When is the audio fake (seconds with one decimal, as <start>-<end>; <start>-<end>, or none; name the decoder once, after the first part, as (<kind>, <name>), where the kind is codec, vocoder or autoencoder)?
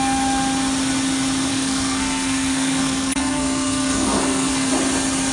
1.5-4.7 (codec, SNAC)